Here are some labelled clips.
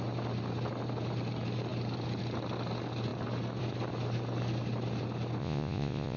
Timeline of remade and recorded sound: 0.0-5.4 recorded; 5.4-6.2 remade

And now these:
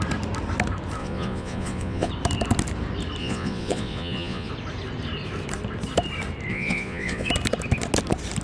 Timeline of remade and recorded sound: 0.0-1.0 recorded; 1.0-2.1 remade; 2.1-3.2 recorded; 3.2-4.5 remade; 4.5-6.5 recorded; 6.5-7.3 remade; 7.3-8.4 recorded

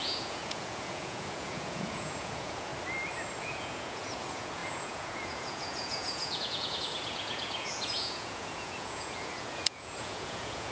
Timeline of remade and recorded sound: 0.0-2.7 remade; 2.7-3.4 recorded; 3.4-10.7 remade

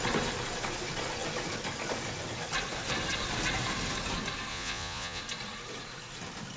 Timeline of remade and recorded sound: 0.0-4.5 recorded; 4.5-5.2 remade; 5.2-6.6 recorded

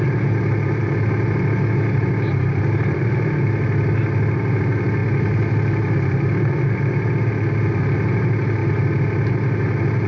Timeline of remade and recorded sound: 0.0-10.1 recorded